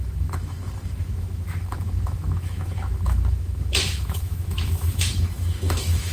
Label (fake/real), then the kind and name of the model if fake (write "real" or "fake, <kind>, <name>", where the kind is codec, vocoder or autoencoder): fake, autoencoder, DAC-VAE